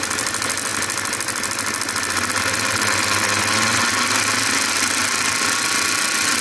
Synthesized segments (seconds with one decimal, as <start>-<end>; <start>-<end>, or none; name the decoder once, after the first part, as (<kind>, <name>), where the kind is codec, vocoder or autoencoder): none